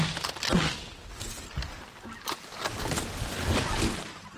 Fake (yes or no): no